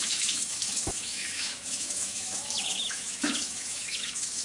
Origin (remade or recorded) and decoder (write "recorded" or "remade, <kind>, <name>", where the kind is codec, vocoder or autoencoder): remade, autoencoder, DAC-VAE